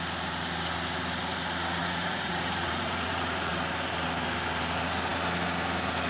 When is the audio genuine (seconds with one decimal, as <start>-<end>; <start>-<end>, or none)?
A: 0.0-1.8; 3.5-6.1